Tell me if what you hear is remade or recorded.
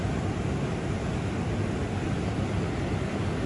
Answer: recorded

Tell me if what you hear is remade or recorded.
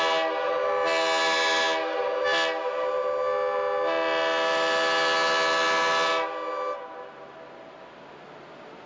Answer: recorded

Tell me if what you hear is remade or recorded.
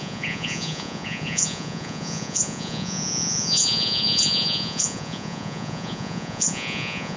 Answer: remade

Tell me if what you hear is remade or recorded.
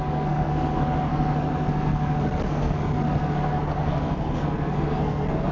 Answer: remade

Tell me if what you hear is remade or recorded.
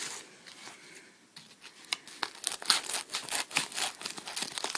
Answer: recorded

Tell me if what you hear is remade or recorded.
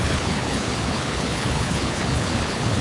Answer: remade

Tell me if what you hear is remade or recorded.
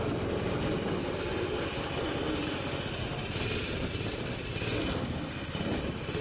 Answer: recorded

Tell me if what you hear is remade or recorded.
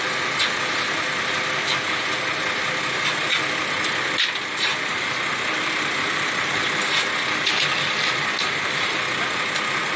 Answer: recorded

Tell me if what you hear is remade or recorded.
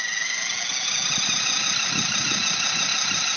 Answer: recorded